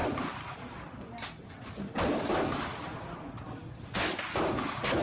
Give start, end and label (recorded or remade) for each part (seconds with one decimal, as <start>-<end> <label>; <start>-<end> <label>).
0.0-5.0 recorded